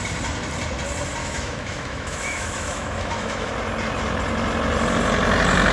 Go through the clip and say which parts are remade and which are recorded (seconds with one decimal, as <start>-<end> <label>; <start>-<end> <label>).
0.0-1.2 recorded; 1.2-3.5 remade; 3.5-5.7 recorded